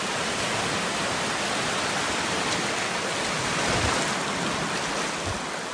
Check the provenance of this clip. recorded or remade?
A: recorded